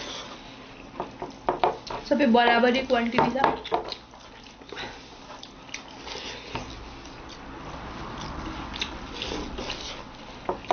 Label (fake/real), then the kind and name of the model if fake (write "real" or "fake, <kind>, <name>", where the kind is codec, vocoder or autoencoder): real